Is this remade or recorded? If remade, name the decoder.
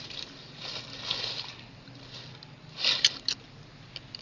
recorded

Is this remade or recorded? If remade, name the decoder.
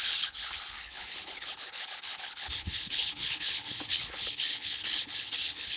remade, codec, HILCodec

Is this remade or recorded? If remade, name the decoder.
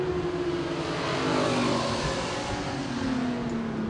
recorded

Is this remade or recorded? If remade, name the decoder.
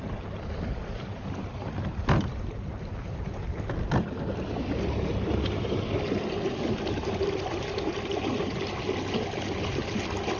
recorded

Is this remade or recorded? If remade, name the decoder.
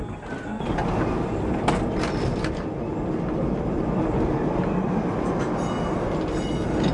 recorded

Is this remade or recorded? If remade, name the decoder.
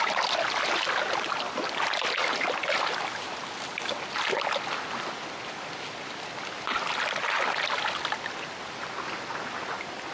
recorded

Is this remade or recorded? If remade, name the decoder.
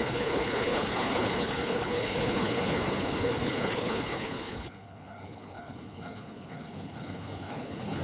remade, codec, HILCodec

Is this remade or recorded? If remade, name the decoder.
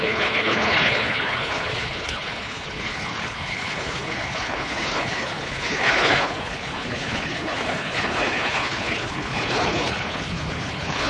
remade, codec, HILCodec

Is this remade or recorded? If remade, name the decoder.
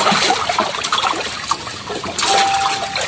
recorded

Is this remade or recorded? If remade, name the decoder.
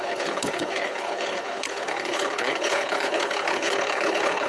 remade, codec, HILCodec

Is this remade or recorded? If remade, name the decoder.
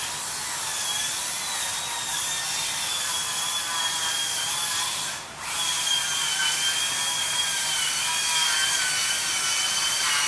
recorded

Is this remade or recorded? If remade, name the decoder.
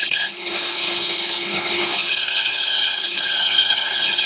remade, codec, HILCodec